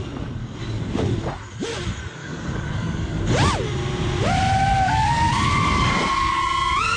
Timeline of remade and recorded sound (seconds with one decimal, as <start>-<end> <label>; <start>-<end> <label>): 0.0-0.4 recorded; 0.4-1.0 remade; 1.0-2.2 recorded; 2.2-3.2 remade; 3.2-4.7 recorded; 4.7-5.3 remade; 5.3-7.0 recorded